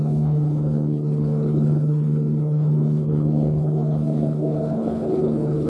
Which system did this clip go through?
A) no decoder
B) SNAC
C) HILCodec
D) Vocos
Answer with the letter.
C